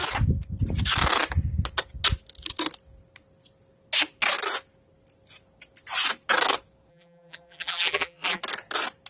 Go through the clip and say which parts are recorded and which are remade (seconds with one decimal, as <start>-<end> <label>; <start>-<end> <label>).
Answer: 0.0-6.9 recorded; 6.9-8.4 remade; 8.4-9.1 recorded